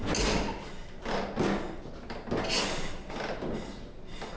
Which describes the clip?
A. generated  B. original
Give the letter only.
B